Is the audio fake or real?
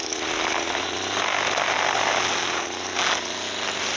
real